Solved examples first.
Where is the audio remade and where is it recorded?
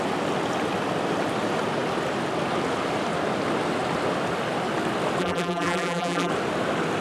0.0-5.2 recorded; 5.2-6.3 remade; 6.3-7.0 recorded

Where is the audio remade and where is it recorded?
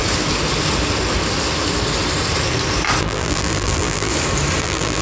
0.0-3.0 recorded; 3.0-4.1 remade; 4.1-4.6 recorded; 4.6-5.0 remade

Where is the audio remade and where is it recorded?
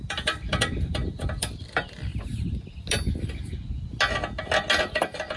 0.0-2.1 remade; 2.1-4.8 recorded; 4.8-5.4 remade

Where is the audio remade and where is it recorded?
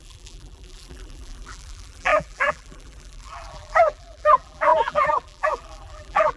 0.0-6.4 remade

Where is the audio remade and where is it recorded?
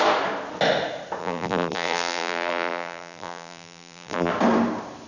0.0-1.2 recorded; 1.2-4.3 remade; 4.3-5.1 recorded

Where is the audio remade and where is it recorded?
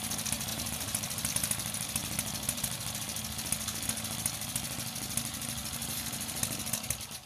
0.0-0.5 recorded; 0.5-1.3 remade; 1.3-5.8 recorded; 5.8-6.6 remade; 6.6-7.3 recorded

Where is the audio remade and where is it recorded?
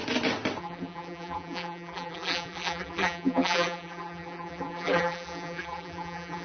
0.0-0.6 recorded; 0.6-6.4 remade